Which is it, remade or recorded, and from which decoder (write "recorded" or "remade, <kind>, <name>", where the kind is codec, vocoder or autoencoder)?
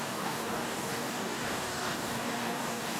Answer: remade, codec, DAC